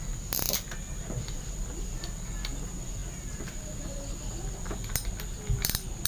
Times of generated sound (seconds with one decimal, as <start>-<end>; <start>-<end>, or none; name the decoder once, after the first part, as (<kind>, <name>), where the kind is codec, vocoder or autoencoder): none